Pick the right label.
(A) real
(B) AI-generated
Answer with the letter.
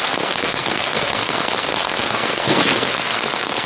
B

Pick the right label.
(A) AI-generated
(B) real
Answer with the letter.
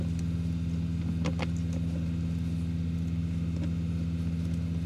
B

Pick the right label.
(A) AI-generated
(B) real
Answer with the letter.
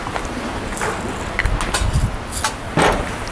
B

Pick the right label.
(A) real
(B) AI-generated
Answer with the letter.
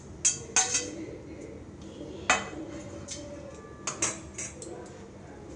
A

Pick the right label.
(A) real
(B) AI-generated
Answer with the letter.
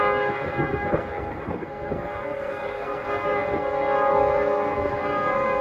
B